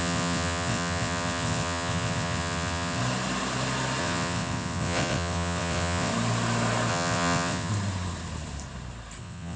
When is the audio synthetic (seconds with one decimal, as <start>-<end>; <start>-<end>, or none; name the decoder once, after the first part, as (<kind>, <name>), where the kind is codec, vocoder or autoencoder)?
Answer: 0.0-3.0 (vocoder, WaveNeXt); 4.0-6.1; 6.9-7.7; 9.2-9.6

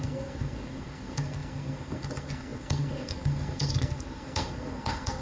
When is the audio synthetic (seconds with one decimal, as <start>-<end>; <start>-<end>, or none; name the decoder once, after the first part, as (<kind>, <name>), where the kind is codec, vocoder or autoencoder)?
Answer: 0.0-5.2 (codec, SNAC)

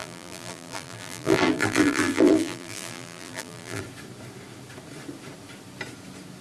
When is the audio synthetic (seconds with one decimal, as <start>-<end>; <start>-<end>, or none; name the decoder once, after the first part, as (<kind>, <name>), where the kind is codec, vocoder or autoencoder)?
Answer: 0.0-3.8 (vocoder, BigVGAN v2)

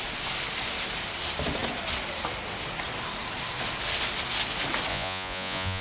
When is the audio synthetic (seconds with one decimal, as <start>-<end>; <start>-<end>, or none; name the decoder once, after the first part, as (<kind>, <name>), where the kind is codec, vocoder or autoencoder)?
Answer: 4.9-5.8 (vocoder, Vocos)

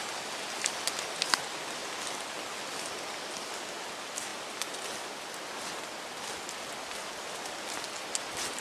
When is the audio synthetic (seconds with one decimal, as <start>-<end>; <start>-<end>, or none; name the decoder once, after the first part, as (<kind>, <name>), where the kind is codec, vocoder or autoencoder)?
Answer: none

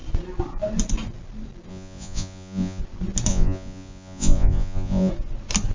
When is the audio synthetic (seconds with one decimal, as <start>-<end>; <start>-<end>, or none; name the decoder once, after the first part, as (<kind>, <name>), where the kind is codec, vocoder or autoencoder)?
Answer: 1.7-2.8 (vocoder, Vocos); 3.3-5.1

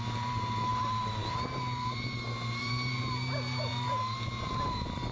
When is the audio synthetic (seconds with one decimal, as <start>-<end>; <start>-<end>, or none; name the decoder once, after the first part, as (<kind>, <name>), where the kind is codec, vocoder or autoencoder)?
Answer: 0.0-5.1 (vocoder, BigVGAN v2)

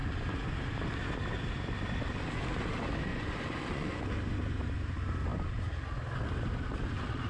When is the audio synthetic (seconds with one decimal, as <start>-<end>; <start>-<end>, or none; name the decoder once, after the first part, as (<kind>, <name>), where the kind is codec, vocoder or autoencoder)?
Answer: 3.1-4.0 (vocoder, Vocos)